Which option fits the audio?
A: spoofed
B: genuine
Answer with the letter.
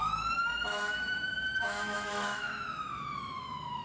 A